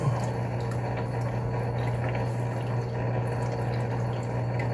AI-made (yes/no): no